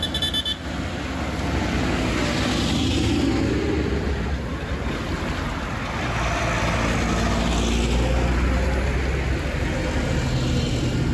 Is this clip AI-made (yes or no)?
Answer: no